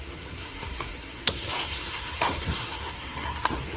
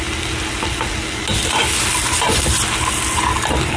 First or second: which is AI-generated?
first